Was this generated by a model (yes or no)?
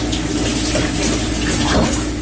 no